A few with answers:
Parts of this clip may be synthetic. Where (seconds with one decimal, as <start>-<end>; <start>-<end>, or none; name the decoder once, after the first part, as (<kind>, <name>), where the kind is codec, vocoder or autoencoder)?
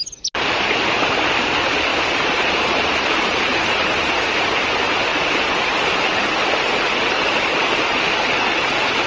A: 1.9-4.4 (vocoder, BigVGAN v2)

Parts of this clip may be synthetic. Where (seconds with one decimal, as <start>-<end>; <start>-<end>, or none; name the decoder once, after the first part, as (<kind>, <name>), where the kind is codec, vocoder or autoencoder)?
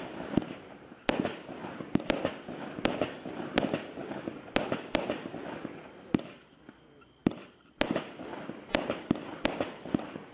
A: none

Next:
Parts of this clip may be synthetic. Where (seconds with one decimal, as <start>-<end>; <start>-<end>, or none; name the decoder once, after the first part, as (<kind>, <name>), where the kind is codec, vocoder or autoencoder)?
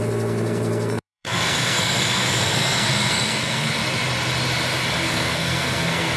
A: 0.0-3.8 (codec, SNAC); 4.9-6.2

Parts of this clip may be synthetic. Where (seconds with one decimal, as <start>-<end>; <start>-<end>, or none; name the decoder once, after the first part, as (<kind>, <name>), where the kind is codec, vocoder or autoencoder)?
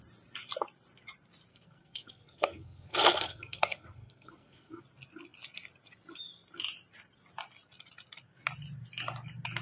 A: 1.5-4.8 (codec, SNAC)